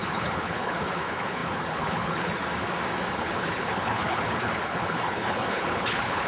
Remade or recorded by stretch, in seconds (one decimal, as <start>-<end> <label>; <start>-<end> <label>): 0.0-2.4 remade; 2.4-3.1 recorded; 3.1-6.3 remade